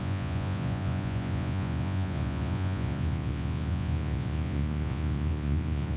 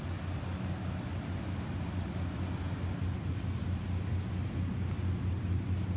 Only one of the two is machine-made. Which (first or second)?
first